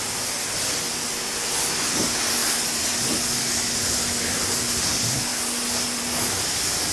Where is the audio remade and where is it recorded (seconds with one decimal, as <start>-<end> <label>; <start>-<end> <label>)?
0.0-6.9 recorded